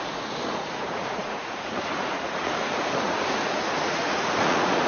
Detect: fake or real fake